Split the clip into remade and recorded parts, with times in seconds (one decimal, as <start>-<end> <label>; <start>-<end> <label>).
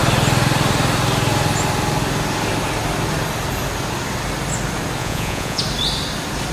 0.0-5.0 recorded; 5.0-5.6 remade; 5.6-6.5 recorded